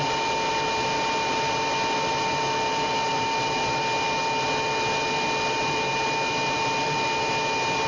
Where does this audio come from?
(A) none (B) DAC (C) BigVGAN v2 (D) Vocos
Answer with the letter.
A